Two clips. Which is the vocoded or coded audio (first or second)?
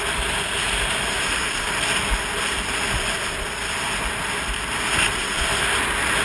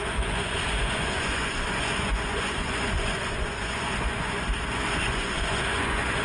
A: second